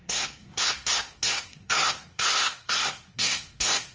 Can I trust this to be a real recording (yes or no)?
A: no